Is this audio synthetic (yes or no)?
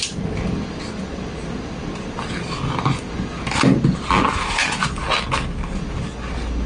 no